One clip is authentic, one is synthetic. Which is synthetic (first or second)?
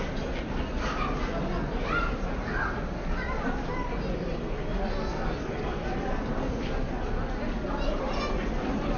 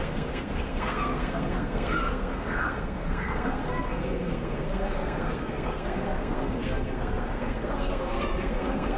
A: second